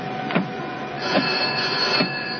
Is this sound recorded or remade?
remade